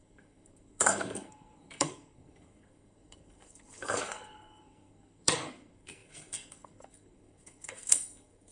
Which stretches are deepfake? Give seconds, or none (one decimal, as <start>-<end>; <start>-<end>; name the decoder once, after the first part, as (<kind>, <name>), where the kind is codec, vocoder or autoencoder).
0.0-8.5 (codec, SNAC)